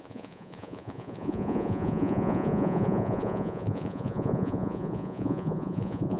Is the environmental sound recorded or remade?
remade